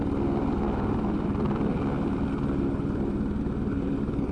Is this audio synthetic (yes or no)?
no